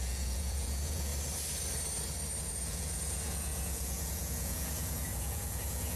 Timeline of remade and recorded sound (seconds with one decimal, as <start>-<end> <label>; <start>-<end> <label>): 0.0-1.1 remade; 1.1-2.4 recorded; 2.4-6.0 remade